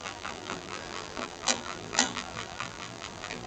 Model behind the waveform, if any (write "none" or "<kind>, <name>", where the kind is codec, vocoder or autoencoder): vocoder, BigVGAN v2